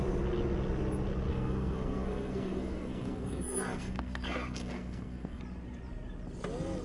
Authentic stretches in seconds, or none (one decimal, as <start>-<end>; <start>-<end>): 0.0-1.3; 5.4-6.8